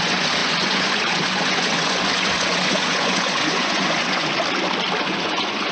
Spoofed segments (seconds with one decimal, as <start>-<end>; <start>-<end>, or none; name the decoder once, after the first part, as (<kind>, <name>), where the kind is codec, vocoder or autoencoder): 0.0-4.3 (vocoder, Vocos); 5.0-5.7